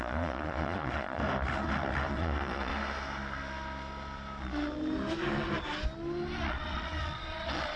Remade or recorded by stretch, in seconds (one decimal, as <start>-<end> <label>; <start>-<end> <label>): 0.0-1.2 remade; 1.2-2.1 recorded; 2.1-2.7 remade; 2.7-6.5 recorded; 6.5-7.8 remade